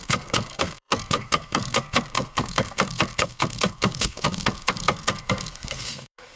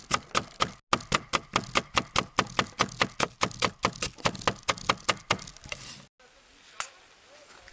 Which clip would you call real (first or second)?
second